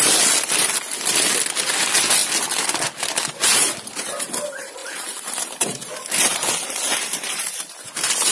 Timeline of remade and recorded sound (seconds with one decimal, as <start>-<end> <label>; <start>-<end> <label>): 0.0-4.8 recorded; 4.8-6.5 remade; 6.5-6.9 recorded; 6.9-8.3 remade